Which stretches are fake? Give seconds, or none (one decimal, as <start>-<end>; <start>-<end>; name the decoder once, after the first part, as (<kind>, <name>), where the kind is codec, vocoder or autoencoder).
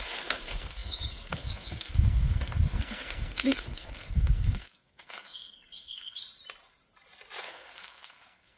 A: 0.0-6.2 (codec, SNAC); 7.4-8.6